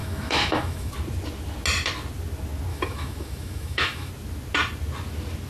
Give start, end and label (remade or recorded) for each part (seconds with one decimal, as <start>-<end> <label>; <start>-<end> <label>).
0.0-0.9 remade; 0.9-2.7 recorded; 2.7-4.1 remade; 4.1-5.5 recorded